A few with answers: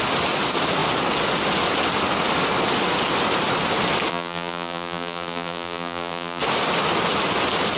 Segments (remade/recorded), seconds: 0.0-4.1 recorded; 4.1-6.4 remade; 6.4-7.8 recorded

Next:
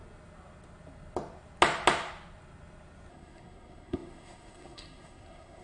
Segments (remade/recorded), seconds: 0.0-3.1 recorded; 3.1-5.6 remade

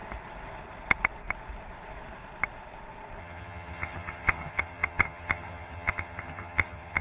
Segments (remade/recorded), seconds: 0.0-3.2 recorded; 3.2-7.0 remade

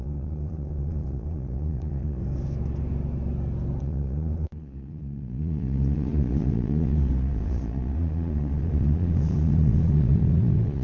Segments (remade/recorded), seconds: 0.0-2.2 remade; 2.2-3.8 recorded; 3.8-10.8 remade

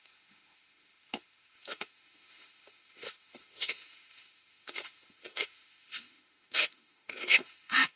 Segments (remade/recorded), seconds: 0.0-8.0 remade

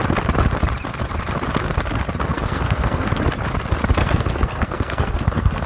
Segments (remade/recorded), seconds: 0.0-2.3 recorded; 2.3-3.2 remade; 3.2-4.0 recorded; 4.0-5.7 remade